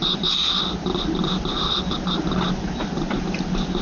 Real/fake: real